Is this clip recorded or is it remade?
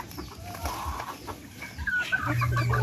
recorded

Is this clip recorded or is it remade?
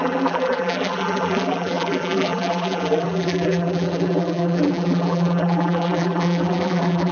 remade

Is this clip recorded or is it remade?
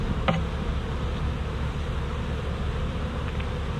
recorded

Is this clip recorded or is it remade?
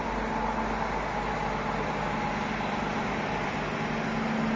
recorded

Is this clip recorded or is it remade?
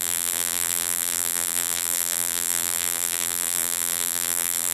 remade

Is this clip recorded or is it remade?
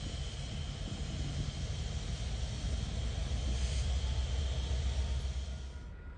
recorded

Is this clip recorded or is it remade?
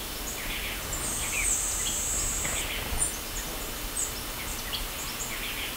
recorded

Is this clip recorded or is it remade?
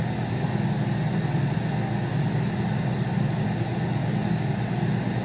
recorded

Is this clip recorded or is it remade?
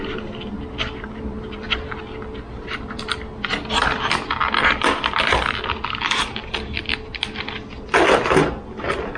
recorded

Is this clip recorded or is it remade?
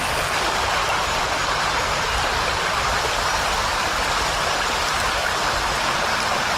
recorded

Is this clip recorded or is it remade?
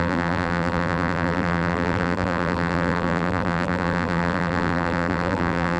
remade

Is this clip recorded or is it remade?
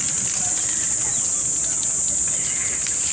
recorded